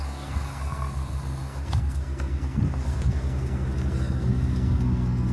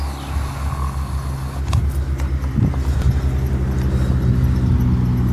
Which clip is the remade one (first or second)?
first